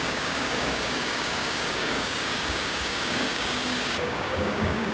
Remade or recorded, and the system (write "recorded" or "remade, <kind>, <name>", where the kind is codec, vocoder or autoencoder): remade, codec, DAC